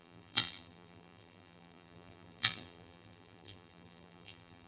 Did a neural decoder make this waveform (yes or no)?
yes